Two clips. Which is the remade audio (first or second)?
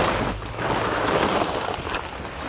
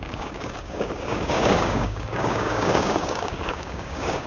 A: second